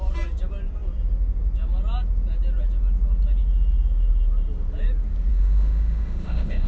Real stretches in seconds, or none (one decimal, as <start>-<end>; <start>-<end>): 0.0-5.3